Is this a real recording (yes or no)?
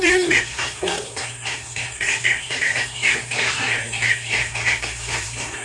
no